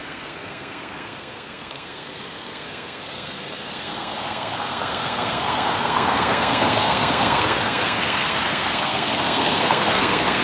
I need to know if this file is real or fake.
fake